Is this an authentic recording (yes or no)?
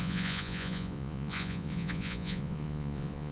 no